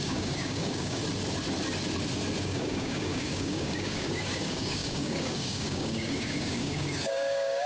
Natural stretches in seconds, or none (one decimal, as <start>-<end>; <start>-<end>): 1.0-2.4